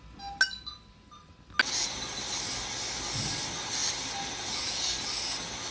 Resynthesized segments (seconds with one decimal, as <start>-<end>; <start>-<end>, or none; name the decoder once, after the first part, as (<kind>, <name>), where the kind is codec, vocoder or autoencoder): none